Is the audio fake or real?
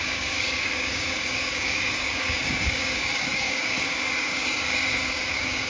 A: fake